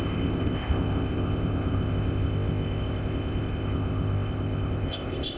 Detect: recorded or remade remade